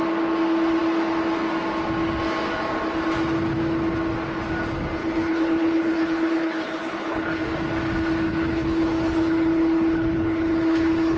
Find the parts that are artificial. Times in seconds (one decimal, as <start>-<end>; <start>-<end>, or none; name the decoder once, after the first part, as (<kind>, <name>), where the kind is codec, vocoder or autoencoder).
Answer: 5.0-7.4 (codec, HILCodec); 8.3-11.2